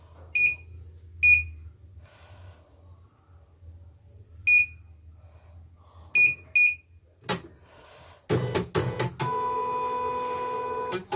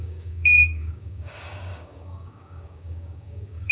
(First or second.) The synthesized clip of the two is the second